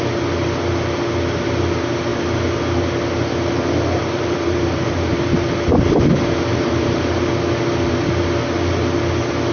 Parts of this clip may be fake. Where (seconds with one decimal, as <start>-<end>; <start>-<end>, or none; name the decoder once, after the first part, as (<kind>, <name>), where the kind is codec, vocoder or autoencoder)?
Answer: 4.0-5.1 (vocoder, BigVGAN v2); 6.5-7.3